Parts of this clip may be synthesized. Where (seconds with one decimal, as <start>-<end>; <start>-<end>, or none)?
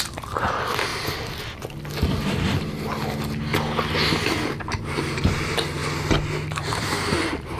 0.0-0.9; 4.6-5.8; 6.6-7.6